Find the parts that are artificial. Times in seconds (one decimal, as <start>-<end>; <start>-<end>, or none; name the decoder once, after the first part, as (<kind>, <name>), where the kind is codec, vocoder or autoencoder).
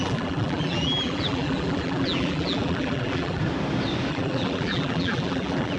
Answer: 0.0-3.4 (vocoder, BigVGAN v2); 4.1-5.8